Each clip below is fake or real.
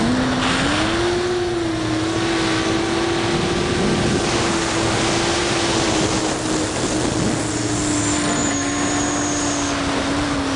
real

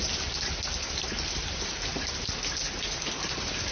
real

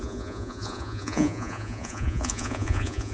fake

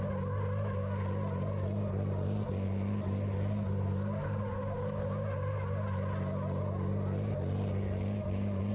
real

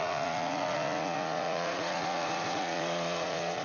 fake